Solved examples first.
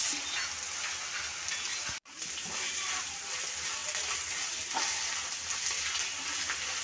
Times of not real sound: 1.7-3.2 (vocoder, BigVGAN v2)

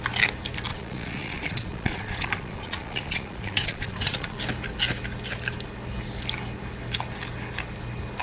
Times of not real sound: 0.7-4.4 (vocoder, Vocos)

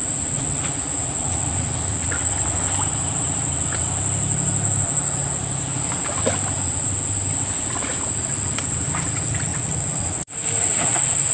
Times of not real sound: 0.0-2.3 (vocoder, Vocos); 9.5-11.3

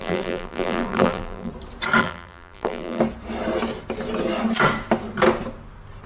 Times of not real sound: 0.0-1.5 (vocoder, BigVGAN v2); 2.0-3.0

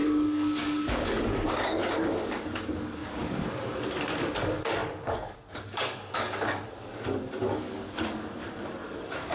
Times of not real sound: 0.0-9.3 (codec, DAC)

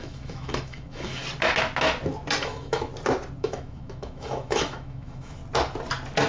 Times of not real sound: 0.0-1.2 (autoencoder, DAC-VAE); 2.4-2.9; 3.4-5.4

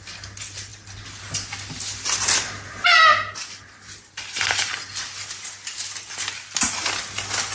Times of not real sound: none

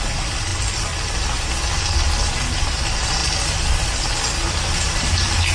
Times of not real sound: 0.0-0.5 (vocoder, BigVGAN v2); 2.6-3.2; 4.5-5.5